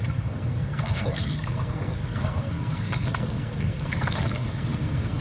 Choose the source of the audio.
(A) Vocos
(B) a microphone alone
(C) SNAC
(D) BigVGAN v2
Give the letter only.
C